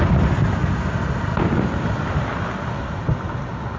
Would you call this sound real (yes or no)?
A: yes